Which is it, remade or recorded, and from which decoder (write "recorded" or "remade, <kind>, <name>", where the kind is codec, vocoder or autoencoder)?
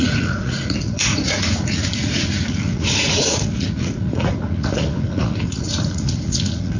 remade, vocoder, Vocos